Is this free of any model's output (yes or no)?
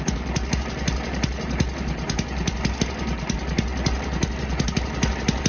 yes